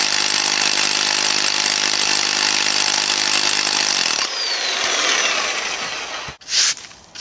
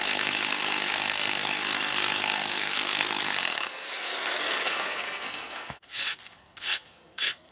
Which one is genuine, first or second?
first